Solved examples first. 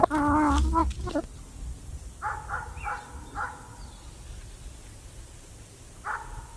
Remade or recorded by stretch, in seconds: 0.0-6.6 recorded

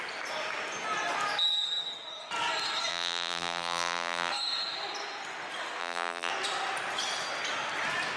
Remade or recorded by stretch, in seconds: 0.0-2.9 recorded; 2.9-4.3 remade; 4.3-5.8 recorded; 5.8-6.3 remade; 6.3-8.2 recorded

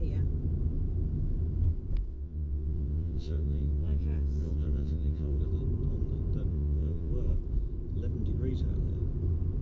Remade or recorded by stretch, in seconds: 0.0-2.1 recorded; 2.1-5.4 remade; 5.4-6.5 recorded; 6.5-7.1 remade; 7.1-9.6 recorded